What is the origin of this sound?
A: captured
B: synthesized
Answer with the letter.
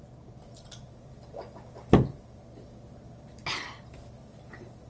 A